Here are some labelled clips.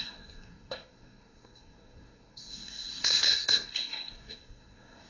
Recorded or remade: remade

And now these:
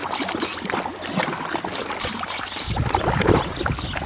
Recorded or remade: recorded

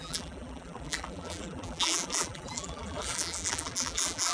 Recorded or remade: remade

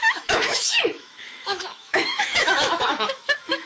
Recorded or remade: remade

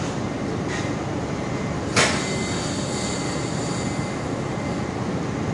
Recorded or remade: recorded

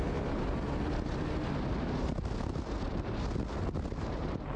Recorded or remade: recorded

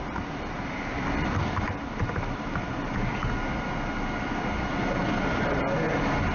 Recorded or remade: recorded